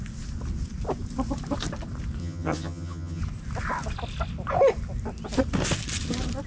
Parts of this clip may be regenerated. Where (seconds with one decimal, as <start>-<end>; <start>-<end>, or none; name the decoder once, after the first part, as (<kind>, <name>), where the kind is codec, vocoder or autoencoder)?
2.2-3.2 (vocoder, HiFi-GAN)

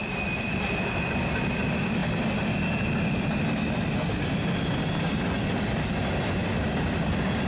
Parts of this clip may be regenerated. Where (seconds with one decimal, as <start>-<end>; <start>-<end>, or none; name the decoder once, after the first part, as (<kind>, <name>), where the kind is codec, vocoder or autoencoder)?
none

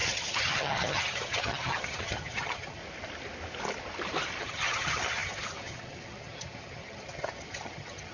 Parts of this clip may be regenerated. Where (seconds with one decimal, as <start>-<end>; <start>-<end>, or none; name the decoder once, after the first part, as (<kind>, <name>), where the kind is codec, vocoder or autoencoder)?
0.0-2.8 (vocoder, HiFi-GAN); 4.4-8.1

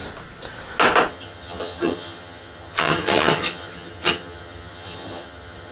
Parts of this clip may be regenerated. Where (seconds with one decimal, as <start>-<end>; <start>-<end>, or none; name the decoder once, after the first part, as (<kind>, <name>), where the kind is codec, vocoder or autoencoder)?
1.1-5.7 (vocoder, HiFi-GAN)

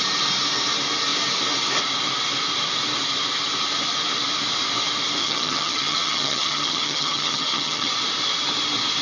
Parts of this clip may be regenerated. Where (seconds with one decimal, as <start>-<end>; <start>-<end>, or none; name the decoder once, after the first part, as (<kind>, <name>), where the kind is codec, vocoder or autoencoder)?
5.2-7.9 (vocoder, HiFi-GAN)

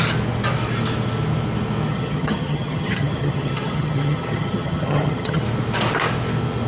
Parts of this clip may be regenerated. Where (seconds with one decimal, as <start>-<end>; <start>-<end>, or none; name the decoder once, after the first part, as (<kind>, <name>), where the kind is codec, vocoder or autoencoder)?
1.9-5.4 (vocoder, HiFi-GAN)